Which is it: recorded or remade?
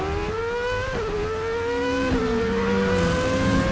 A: recorded